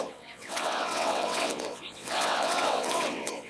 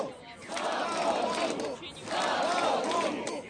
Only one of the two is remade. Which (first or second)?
first